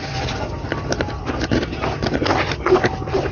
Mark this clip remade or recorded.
recorded